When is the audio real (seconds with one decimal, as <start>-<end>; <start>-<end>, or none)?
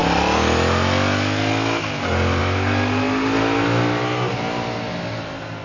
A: 0.0-5.6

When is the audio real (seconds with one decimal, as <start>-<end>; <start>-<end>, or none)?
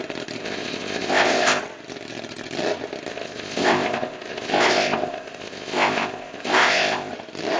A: 0.0-0.4; 1.6-3.1; 7.1-7.6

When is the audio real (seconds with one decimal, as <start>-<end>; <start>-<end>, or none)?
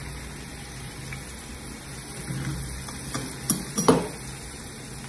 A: 0.0-0.5; 1.0-5.1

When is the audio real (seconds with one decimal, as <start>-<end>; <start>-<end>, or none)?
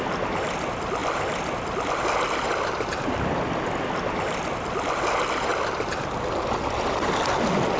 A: 0.0-7.8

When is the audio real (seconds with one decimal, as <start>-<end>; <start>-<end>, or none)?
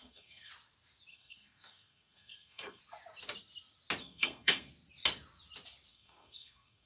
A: 0.5-1.1; 2.8-4.0; 4.7-5.9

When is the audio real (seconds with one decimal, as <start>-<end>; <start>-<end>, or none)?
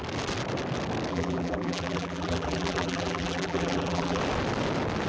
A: 0.0-1.1; 4.2-5.1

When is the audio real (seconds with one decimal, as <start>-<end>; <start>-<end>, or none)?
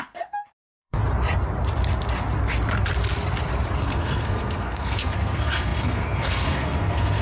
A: 1.0-3.8